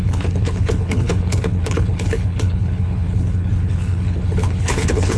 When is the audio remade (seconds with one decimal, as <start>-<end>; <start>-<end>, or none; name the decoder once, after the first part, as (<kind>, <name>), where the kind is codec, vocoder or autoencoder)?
0.0-5.2 (codec, HILCodec)